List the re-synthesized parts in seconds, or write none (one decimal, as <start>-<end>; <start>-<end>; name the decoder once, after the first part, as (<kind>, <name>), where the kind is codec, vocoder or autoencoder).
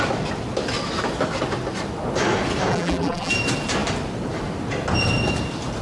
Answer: 2.7-3.3 (vocoder, BigVGAN v2)